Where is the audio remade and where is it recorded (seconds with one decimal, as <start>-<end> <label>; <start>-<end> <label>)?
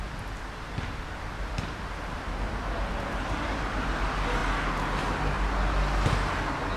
0.0-6.8 recorded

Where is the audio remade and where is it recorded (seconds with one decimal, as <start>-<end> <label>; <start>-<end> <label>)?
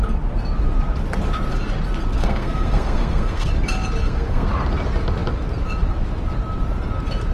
0.0-2.2 recorded; 2.2-3.5 remade; 3.5-4.0 recorded; 4.0-4.5 remade; 4.5-7.3 recorded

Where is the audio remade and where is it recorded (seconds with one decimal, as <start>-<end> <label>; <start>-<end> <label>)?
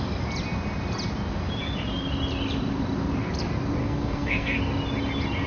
0.0-3.8 recorded; 3.8-4.6 remade; 4.6-5.5 recorded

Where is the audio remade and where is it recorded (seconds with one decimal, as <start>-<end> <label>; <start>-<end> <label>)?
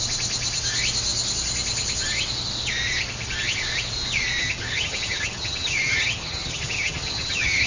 0.0-4.4 recorded; 4.4-7.7 remade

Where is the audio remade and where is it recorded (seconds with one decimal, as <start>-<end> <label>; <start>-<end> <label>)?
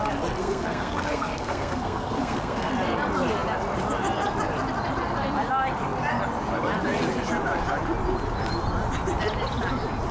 0.0-0.4 recorded; 0.4-2.7 remade; 2.7-10.1 recorded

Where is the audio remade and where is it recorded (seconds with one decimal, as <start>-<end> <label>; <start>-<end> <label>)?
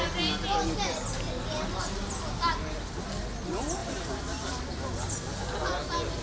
0.0-6.2 recorded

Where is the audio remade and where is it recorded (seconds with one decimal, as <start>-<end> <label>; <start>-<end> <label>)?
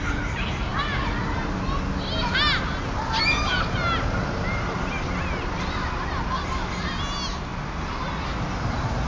0.0-9.1 recorded